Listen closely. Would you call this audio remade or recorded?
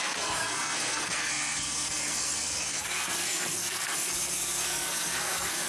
remade